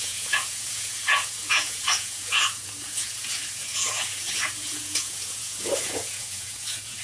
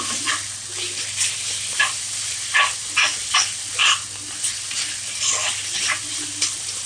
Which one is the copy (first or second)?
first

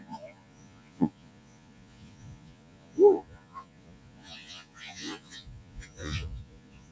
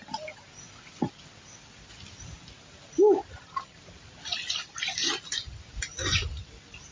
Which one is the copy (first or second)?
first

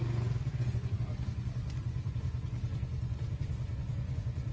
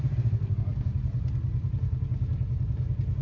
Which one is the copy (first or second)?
first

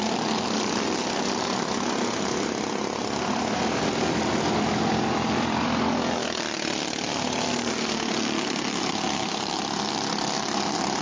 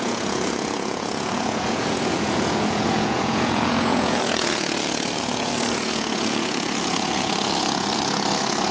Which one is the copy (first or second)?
second